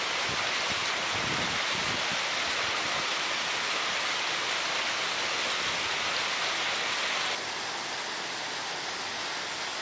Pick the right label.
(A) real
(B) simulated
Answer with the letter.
A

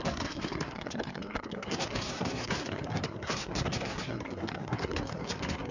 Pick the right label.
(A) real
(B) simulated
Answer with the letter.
B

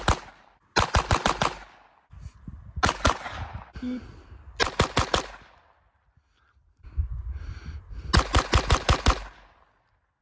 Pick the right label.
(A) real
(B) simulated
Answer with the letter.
A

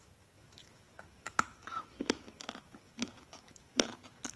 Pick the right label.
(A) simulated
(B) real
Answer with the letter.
A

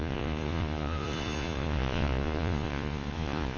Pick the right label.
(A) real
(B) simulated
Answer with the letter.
B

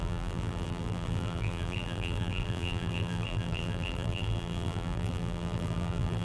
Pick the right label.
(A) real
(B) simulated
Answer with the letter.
B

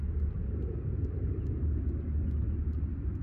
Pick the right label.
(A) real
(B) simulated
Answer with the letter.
A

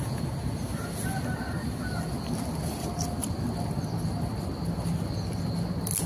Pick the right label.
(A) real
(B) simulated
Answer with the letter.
A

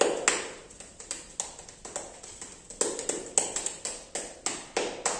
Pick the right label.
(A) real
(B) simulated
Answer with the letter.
A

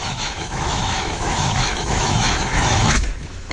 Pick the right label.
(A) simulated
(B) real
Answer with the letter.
A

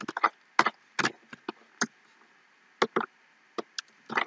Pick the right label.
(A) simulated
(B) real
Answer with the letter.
B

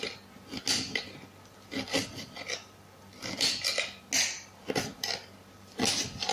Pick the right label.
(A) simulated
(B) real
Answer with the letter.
B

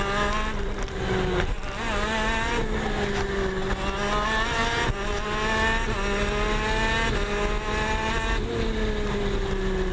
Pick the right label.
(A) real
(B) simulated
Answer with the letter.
A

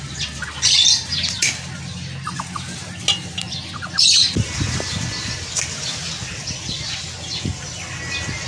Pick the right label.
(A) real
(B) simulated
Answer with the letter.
A